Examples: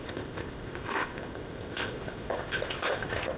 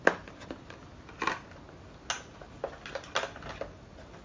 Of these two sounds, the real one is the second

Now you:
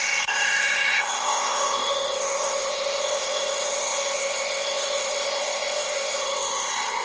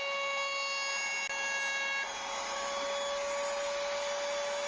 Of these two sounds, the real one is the second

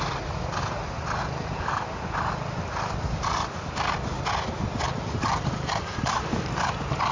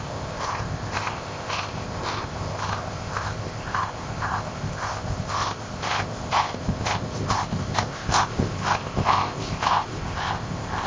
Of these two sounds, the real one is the first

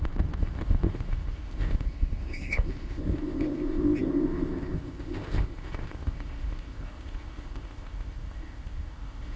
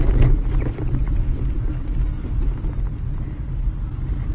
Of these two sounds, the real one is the second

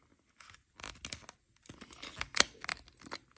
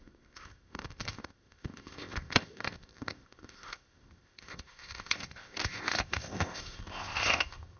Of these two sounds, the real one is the first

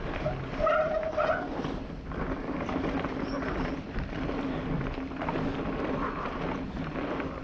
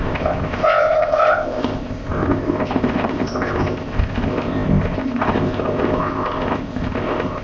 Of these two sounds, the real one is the first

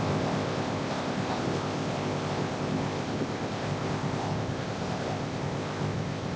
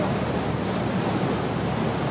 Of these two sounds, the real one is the second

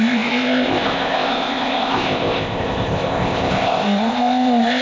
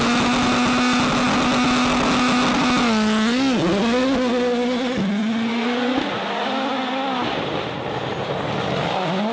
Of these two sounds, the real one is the second